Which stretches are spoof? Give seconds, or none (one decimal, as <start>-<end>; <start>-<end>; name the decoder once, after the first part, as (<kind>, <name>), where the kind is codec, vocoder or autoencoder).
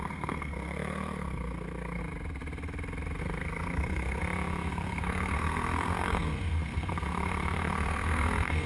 0.0-2.0 (codec, SNAC); 3.2-4.2; 4.7-8.7